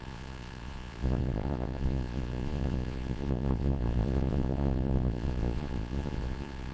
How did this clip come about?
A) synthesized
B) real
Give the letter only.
A